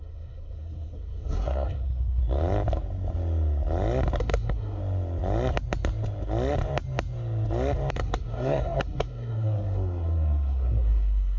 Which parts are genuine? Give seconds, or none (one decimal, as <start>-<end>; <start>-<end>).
2.2-4.2; 4.8-7.9